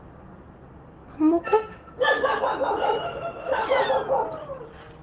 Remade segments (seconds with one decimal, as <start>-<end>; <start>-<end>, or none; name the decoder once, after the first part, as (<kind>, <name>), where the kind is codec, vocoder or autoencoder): 1.0-3.9 (autoencoder, DAC-VAE)